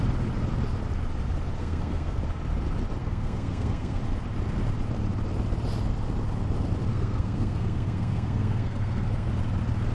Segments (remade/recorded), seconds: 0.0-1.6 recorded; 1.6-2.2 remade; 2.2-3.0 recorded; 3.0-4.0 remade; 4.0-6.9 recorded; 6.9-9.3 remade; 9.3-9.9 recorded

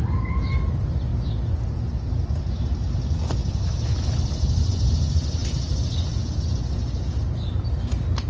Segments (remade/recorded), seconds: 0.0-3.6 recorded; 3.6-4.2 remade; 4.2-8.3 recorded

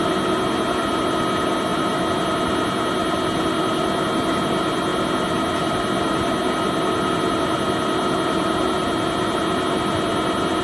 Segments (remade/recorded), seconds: 0.0-10.6 recorded

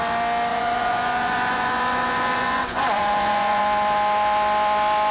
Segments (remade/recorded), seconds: 0.0-0.5 recorded; 0.5-3.6 remade; 3.6-5.1 recorded

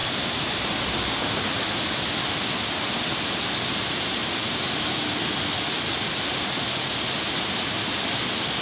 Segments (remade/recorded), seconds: 0.0-1.8 remade; 1.8-8.6 recorded